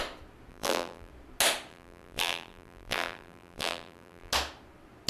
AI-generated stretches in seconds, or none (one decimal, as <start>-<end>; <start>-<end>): 0.5-1.1; 1.7-4.3